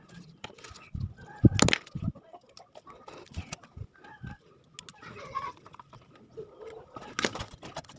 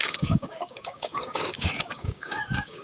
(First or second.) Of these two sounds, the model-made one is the second